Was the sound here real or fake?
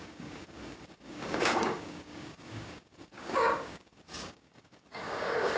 fake